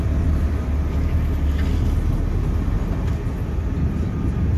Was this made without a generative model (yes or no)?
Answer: yes